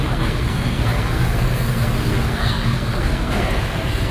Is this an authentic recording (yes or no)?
no